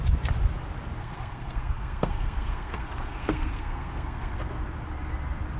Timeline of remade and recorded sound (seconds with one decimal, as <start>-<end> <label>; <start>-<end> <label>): 0.0-1.0 recorded; 1.0-4.4 remade; 4.4-5.6 recorded